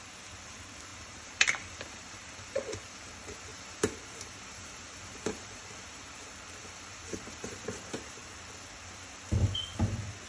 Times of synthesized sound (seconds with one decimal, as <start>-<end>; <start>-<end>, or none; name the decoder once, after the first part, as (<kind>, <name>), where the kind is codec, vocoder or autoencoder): 0.9-3.1 (vocoder, BigVGAN v2); 3.5-6.1; 6.6-7.6